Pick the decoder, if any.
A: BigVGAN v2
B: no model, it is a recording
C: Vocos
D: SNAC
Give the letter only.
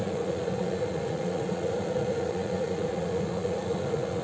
C